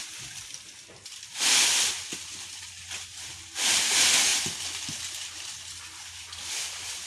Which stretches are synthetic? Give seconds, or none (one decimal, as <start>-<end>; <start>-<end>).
none